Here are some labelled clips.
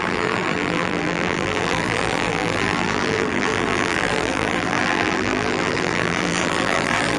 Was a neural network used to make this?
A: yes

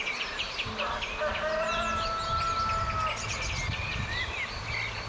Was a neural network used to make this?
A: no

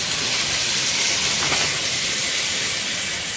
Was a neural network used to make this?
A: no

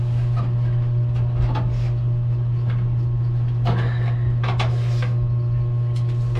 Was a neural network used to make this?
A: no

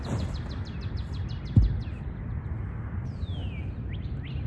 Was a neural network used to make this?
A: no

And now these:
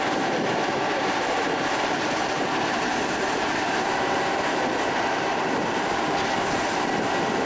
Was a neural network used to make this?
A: yes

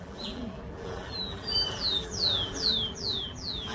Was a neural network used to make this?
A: yes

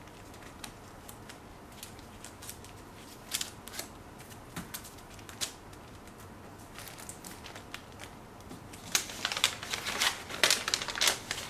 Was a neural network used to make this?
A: no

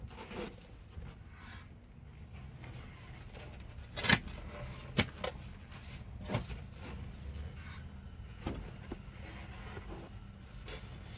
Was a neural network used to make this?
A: no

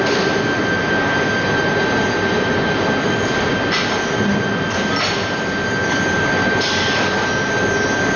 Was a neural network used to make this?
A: no